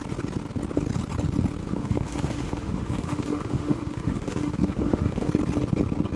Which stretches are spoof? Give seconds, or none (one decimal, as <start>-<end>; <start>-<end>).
1.6-5.3